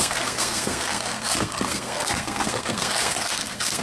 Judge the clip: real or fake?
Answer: fake